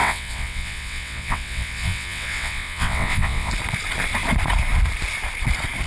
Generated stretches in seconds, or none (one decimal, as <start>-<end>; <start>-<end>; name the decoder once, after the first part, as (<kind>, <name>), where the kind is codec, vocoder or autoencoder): 0.0-3.5 (vocoder, WaveNeXt)

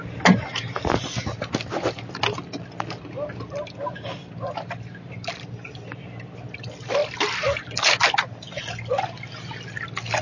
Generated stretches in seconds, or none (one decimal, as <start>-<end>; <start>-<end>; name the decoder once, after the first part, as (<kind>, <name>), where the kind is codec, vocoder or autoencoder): none